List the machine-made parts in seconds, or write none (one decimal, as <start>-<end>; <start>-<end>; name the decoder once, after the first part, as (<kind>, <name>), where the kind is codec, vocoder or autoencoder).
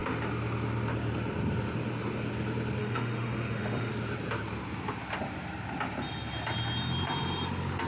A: 2.8-3.9 (autoencoder, DAC-VAE)